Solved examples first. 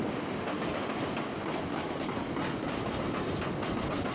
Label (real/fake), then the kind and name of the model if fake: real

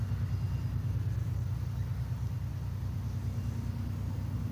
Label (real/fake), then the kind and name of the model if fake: real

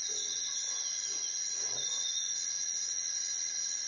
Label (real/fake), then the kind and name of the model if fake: real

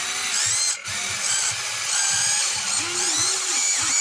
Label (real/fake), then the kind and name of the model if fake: real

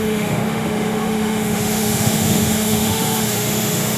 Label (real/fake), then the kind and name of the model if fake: fake, autoencoder, DAC-VAE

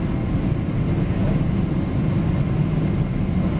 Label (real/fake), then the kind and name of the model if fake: real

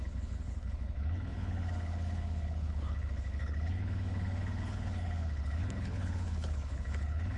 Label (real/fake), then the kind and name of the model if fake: fake, codec, HILCodec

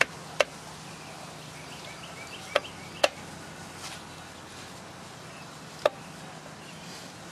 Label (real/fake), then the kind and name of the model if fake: real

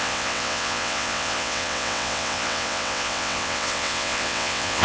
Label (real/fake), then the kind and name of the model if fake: fake, vocoder, WaveNeXt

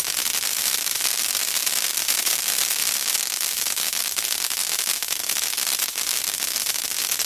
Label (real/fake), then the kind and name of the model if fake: fake, autoencoder, DAC-VAE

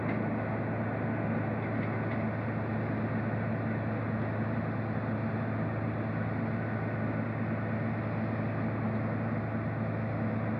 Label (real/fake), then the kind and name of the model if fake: real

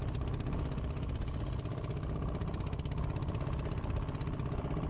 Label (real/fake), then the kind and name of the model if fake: real